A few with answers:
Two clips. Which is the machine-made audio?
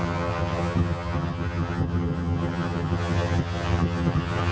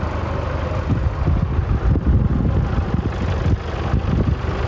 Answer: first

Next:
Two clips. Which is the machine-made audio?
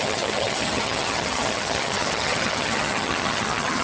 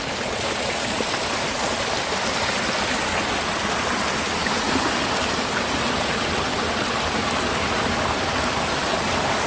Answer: first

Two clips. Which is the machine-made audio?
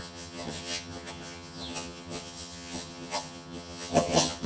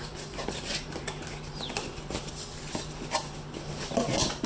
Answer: first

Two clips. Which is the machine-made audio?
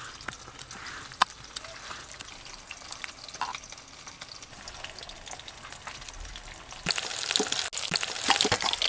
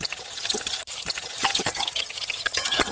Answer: second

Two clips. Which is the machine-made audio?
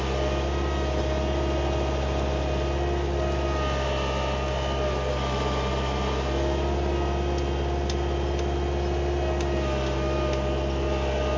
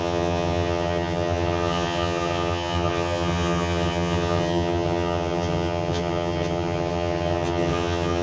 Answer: second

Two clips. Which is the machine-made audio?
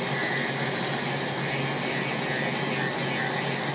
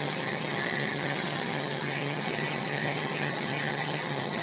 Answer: second